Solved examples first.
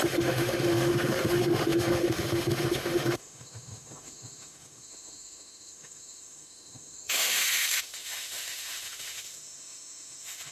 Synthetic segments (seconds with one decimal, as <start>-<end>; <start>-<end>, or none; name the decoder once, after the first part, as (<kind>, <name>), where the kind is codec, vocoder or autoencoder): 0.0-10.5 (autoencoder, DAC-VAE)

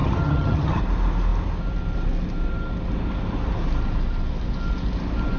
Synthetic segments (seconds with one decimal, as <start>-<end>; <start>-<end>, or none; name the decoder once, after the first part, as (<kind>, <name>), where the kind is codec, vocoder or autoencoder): 0.0-0.8 (vocoder, HiFi-GAN)

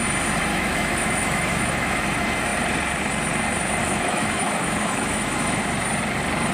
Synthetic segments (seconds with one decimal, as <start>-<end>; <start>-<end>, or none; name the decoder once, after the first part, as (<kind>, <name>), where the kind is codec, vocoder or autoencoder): 0.5-2.0 (autoencoder, DAC-VAE); 3.8-5.6